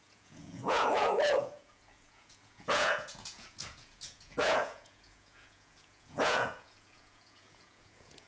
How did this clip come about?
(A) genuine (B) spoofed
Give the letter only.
B